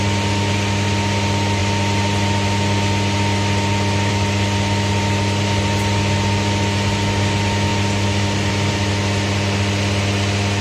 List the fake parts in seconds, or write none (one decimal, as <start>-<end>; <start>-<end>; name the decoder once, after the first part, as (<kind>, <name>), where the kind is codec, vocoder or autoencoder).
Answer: none

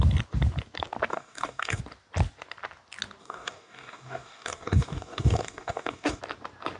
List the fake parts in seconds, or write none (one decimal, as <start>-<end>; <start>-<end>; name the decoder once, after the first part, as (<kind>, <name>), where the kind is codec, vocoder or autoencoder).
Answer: 1.1-1.8 (codec, DAC); 3.2-6.2

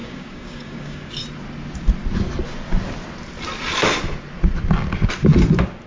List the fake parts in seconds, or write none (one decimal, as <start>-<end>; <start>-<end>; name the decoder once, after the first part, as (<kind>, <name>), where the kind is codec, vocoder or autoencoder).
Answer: 0.0-1.1 (codec, DAC)

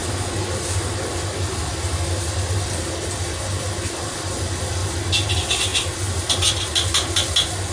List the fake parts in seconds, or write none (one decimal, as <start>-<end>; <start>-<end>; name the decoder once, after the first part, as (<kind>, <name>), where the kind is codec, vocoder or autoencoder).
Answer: none

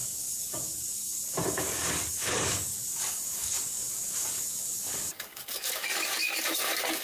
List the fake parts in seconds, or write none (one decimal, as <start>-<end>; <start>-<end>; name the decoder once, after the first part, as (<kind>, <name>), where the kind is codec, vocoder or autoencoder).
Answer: 0.0-7.0 (codec, DAC)

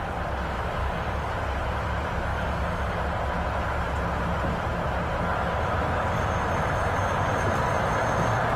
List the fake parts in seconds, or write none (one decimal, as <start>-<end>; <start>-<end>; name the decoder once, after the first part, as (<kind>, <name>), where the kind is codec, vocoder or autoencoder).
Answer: 0.8-1.3 (codec, DAC); 2.3-3.0

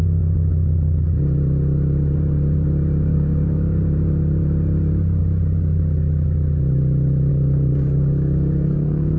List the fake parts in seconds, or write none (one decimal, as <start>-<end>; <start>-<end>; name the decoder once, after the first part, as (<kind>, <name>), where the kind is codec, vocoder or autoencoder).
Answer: 3.1-3.8 (codec, DAC); 7.3-9.2

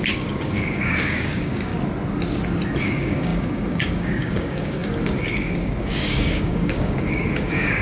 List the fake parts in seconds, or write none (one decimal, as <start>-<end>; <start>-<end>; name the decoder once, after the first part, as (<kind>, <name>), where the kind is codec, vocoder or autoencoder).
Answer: 0.0-1.7 (codec, DAC); 2.8-7.8